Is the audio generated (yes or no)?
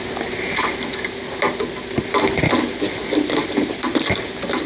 no